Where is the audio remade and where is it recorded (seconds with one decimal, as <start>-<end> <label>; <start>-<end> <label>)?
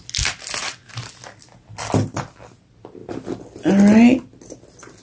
0.0-5.0 recorded